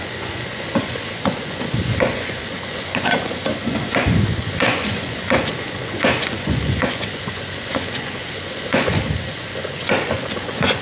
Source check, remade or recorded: remade